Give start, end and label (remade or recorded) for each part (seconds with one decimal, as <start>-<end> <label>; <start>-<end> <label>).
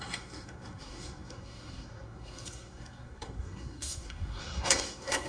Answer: 0.0-5.3 remade